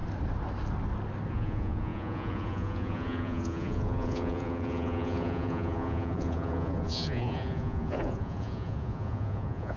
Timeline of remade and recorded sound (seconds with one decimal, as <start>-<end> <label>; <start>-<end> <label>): 0.0-1.3 recorded; 1.3-9.8 remade